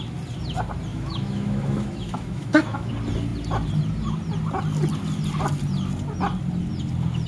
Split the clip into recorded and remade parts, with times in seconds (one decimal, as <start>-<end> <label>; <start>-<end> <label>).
0.0-0.9 recorded; 0.9-2.9 remade; 2.9-7.3 recorded